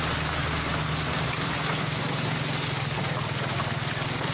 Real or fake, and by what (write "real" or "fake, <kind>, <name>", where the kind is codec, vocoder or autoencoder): real